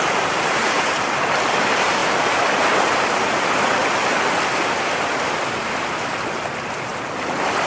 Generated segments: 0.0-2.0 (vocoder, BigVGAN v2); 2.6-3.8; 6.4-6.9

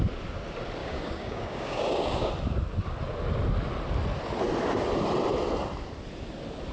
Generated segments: 0.8-2.3 (codec, DAC)

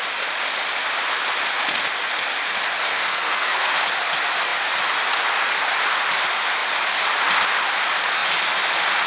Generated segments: 2.9-3.7 (codec, SNAC)

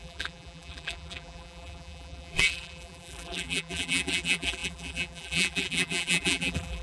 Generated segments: 0.0-6.8 (vocoder, BigVGAN v2)

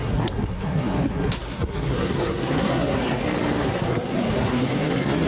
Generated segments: 0.0-3.2 (codec, SNAC); 3.6-5.3